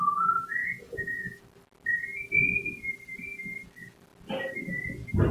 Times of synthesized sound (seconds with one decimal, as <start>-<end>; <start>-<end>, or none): 0.6-1.4